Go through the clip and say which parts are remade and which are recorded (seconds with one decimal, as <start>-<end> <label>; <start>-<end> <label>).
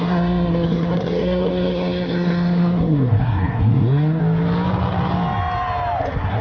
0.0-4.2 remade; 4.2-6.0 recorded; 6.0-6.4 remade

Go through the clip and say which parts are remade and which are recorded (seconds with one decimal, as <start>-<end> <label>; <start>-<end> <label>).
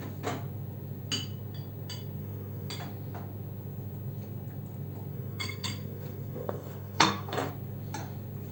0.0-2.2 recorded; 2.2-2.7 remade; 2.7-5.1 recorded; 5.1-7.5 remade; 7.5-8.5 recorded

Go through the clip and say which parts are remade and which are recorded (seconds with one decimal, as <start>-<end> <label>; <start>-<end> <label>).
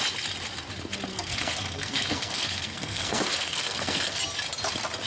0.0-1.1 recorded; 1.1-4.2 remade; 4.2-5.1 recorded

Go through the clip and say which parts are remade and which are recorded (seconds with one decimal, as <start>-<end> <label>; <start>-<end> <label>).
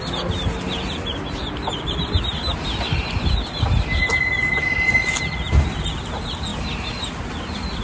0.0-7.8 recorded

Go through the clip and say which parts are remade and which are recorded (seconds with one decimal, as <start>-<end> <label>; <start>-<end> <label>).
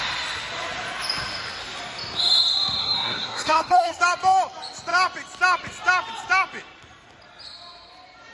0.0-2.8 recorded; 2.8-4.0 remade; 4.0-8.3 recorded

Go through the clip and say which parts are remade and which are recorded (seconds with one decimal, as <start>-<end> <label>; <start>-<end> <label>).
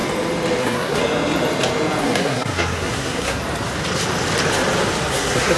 0.0-0.6 recorded; 0.6-1.0 remade; 1.0-2.0 recorded; 2.0-3.4 remade; 3.4-5.1 recorded; 5.1-5.6 remade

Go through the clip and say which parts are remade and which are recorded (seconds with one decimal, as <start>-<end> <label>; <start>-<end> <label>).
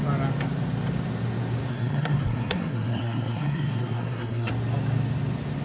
0.0-1.7 recorded; 1.7-4.5 remade; 4.5-5.6 recorded